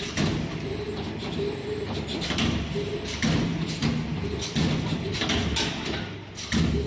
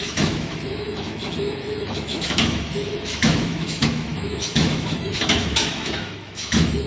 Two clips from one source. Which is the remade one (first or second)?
second